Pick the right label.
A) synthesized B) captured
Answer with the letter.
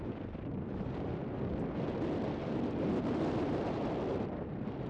B